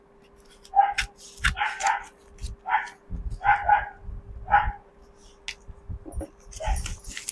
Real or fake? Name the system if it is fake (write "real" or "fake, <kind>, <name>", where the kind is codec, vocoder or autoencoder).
real